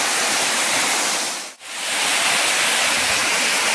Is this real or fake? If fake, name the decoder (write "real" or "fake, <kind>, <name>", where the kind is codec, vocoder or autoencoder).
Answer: real